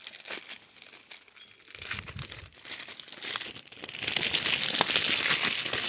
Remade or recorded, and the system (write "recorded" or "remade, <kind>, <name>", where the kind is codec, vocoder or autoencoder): recorded